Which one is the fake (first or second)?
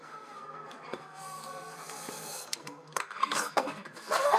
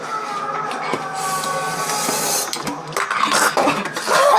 first